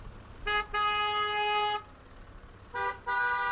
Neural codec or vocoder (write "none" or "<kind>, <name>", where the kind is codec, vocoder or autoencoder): none